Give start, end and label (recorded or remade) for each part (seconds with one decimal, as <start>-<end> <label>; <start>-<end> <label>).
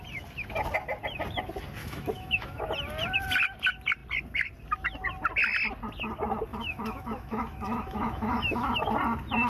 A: 0.0-1.8 recorded; 1.8-2.6 remade; 2.6-6.5 recorded; 6.5-8.9 remade; 8.9-9.5 recorded